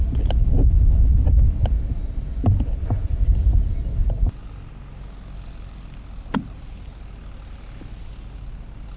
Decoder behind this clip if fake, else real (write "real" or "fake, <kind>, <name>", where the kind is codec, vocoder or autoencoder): real